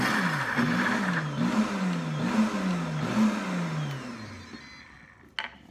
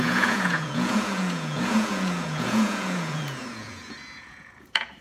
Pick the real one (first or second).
first